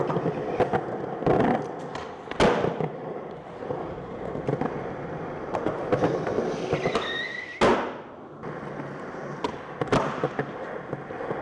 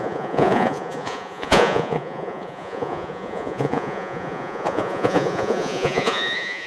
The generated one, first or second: second